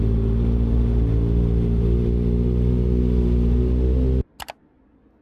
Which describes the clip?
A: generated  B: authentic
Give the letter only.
B